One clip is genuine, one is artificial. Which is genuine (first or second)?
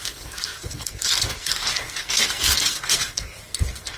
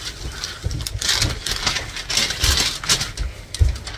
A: second